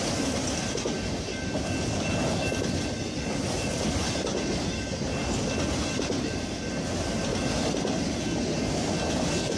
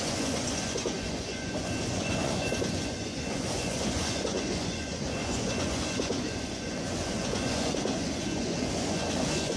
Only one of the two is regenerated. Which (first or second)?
second